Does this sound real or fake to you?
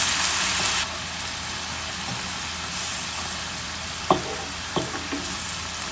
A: real